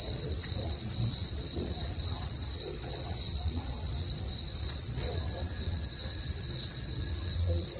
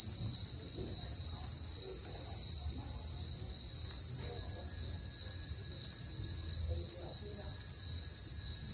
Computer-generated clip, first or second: first